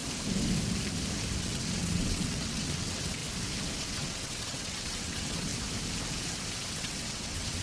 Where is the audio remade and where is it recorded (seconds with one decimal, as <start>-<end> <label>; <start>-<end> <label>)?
0.0-1.4 recorded; 1.4-3.2 remade; 3.2-3.8 recorded; 3.8-5.5 remade; 5.5-6.7 recorded; 6.7-7.6 remade